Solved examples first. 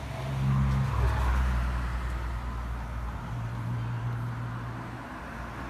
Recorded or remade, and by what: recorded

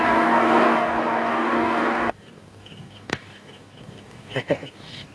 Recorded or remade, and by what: remade, codec, DAC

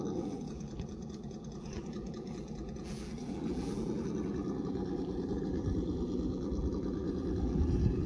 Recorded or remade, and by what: remade, vocoder, BigVGAN v2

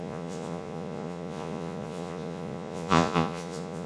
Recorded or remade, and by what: remade, vocoder, Vocos